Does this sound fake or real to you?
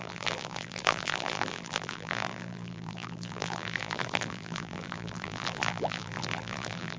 fake